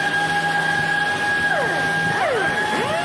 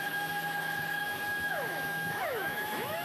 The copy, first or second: second